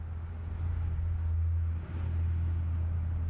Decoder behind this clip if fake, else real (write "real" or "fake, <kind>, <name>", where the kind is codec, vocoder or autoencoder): real